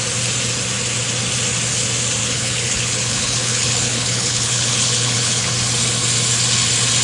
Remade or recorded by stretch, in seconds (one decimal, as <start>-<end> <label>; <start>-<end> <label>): 0.0-2.2 recorded; 2.2-5.5 remade; 5.5-7.0 recorded